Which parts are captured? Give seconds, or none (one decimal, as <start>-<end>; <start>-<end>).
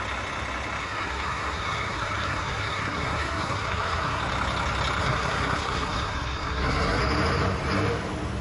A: 0.0-0.8; 4.2-5.0; 7.0-8.4